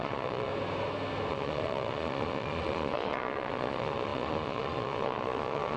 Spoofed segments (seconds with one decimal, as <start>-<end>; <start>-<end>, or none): 0.0-0.5; 1.3-5.8